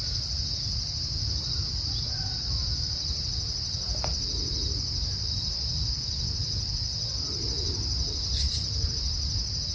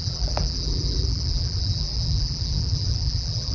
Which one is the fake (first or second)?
second